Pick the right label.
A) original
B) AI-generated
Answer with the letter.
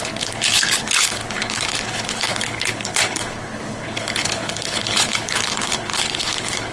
B